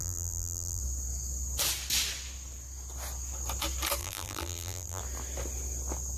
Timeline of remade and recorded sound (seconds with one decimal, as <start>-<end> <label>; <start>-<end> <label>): 0.0-0.8 remade; 0.8-4.0 recorded; 4.0-5.0 remade; 5.0-6.2 recorded